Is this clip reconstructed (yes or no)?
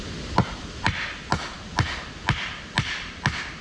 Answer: no